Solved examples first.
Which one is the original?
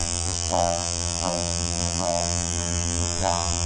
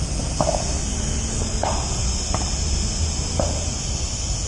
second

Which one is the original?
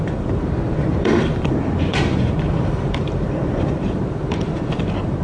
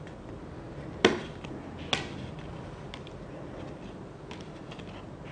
second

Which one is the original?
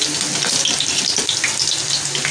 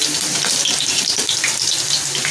first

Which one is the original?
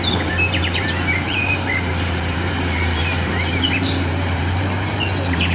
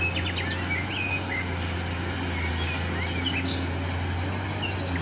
second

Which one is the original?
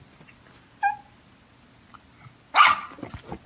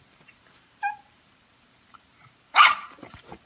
first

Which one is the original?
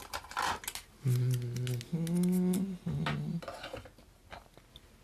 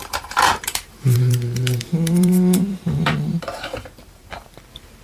first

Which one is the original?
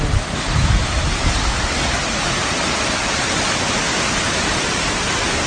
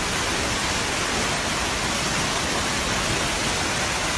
second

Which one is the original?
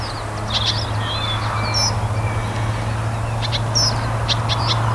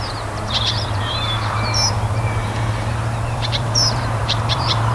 first